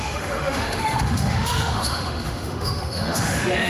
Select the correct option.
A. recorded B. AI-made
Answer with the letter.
B